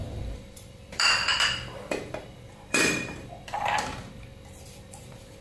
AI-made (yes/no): yes